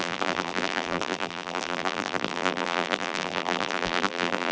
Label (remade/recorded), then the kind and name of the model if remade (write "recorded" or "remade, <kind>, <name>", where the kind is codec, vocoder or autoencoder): remade, vocoder, BigVGAN v2